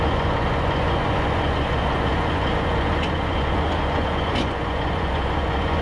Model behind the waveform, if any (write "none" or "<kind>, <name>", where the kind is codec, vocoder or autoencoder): vocoder, Vocos